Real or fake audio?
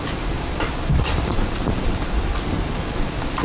fake